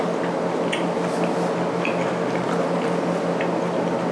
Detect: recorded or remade recorded